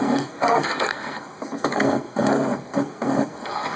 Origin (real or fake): fake